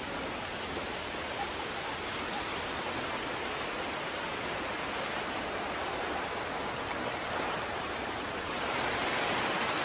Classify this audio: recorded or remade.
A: recorded